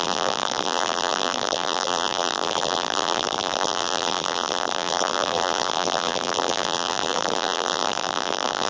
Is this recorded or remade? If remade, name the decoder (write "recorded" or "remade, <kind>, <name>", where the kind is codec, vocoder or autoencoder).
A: remade, vocoder, BigVGAN v2